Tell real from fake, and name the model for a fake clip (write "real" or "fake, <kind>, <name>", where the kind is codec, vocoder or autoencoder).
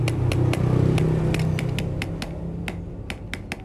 real